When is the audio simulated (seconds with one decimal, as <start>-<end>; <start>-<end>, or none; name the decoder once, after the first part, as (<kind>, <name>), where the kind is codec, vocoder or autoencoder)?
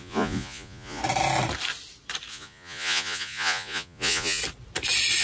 0.0-1.0 (vocoder, Vocos); 2.3-4.4